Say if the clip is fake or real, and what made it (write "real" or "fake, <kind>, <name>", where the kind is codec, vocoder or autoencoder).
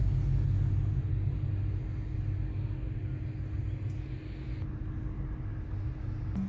real